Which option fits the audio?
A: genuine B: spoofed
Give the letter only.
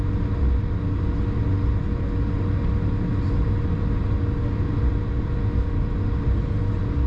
A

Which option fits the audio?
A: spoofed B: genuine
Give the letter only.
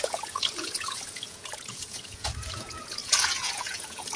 A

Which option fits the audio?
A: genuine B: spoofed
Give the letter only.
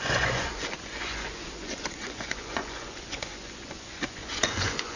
B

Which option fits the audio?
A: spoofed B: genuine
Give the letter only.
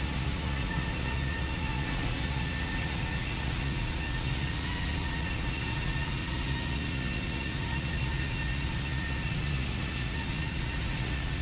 A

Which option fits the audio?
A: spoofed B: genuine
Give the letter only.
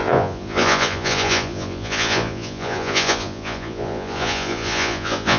A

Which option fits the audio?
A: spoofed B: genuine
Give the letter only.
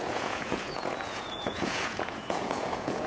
A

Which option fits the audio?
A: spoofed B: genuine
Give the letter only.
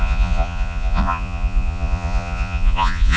A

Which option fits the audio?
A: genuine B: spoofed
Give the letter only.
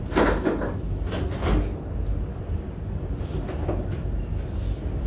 A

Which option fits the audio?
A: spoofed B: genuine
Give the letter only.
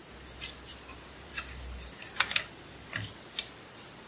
B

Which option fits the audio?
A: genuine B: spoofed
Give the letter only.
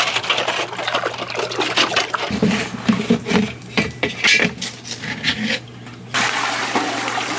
A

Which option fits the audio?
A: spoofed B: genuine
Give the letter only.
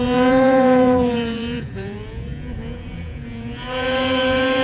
A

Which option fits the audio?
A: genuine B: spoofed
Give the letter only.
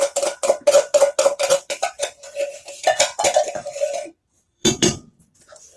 B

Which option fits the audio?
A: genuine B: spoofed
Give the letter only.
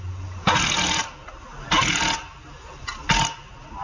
A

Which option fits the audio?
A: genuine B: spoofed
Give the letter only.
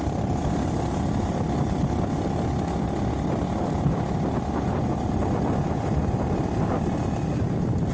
A